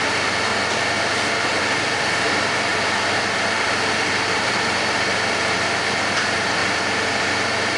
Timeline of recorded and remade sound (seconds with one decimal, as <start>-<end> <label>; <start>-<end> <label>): 0.0-0.5 remade; 0.5-1.6 recorded; 1.6-2.7 remade; 2.7-4.3 recorded; 4.3-6.6 remade; 6.6-7.8 recorded